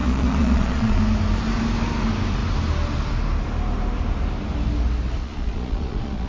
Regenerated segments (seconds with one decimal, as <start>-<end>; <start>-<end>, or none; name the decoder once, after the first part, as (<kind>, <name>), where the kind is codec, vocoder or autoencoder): 0.0-1.0 (vocoder, Vocos); 5.2-6.3